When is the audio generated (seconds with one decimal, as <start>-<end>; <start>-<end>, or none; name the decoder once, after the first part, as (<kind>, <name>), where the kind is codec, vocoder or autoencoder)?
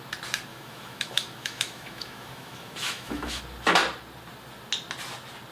0.5-3.4 (autoencoder, DAC-VAE)